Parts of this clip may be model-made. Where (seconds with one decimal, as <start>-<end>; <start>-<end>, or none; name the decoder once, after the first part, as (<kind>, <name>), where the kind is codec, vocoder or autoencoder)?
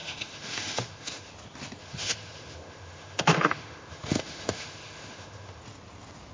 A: 0.0-1.3 (autoencoder, DAC-VAE); 1.8-5.6